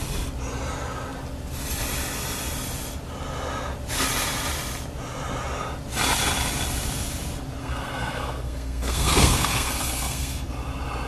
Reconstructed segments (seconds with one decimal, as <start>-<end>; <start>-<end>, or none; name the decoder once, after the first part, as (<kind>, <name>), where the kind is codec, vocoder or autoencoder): 7.6-10.5 (codec, SNAC)